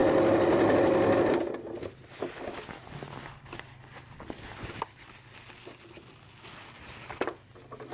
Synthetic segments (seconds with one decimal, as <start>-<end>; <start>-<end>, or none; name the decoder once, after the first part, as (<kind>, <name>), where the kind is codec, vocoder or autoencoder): none